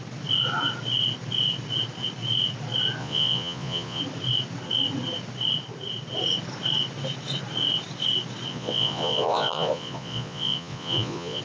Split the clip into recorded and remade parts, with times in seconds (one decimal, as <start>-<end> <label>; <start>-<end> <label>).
0.0-3.0 recorded; 3.0-4.0 remade; 4.0-8.5 recorded; 8.5-11.4 remade